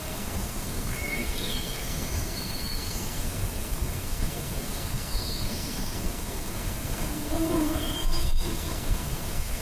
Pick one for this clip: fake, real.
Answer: fake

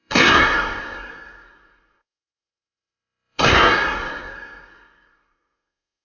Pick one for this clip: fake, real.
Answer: fake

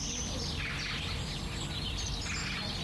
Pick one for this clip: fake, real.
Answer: real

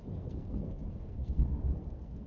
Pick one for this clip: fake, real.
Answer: fake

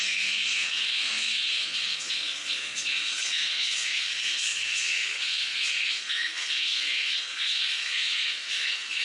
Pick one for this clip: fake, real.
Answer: fake